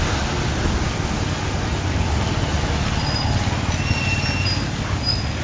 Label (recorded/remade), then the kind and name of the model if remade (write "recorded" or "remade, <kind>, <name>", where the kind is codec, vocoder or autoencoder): recorded